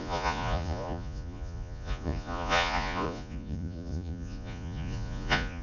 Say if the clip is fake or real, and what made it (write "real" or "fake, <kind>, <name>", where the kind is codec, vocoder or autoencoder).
fake, vocoder, Vocos